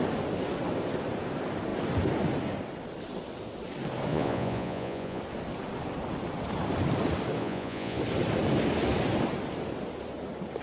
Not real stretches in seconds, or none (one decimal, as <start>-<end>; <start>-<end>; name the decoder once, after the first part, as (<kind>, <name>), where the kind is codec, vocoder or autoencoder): 4.1-5.2 (vocoder, Vocos); 7.4-8.0